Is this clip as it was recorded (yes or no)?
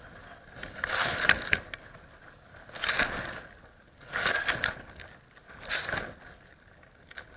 yes